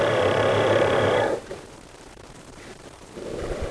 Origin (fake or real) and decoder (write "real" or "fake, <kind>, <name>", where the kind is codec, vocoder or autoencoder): fake, vocoder, BigVGAN v2